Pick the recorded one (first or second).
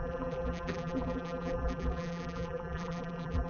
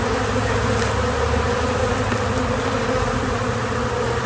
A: second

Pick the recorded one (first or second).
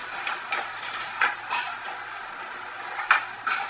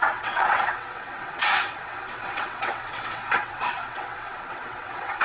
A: first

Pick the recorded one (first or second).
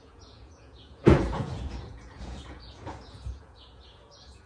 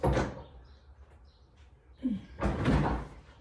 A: second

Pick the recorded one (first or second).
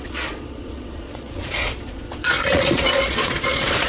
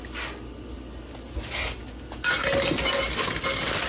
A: second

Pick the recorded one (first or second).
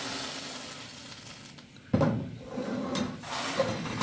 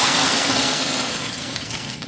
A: first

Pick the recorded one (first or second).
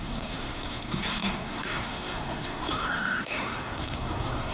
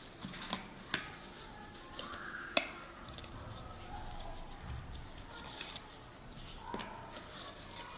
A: second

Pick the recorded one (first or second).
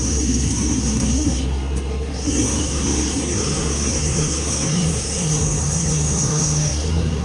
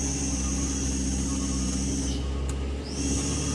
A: second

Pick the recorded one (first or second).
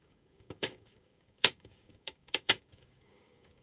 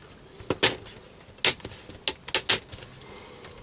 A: second